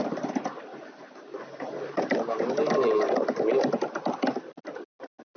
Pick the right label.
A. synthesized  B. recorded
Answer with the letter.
B